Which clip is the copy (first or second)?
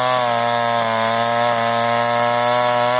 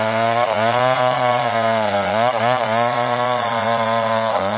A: second